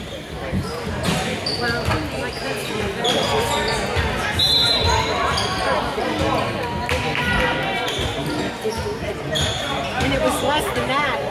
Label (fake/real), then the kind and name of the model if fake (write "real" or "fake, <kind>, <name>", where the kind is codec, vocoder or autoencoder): real